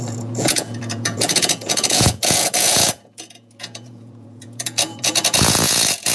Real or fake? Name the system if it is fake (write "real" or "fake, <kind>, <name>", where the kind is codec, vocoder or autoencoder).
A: fake, vocoder, Vocos